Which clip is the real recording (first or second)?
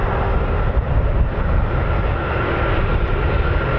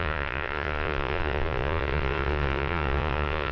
first